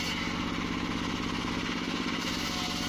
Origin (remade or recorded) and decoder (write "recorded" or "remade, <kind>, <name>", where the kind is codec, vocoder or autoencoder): recorded